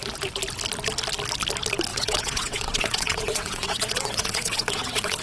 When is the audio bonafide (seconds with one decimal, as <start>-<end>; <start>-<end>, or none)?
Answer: 0.0-1.9